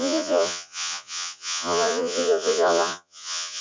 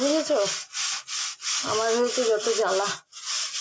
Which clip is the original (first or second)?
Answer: second